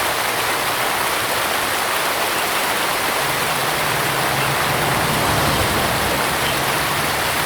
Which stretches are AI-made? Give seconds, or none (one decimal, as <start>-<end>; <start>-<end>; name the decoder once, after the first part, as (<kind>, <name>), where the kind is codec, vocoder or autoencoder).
none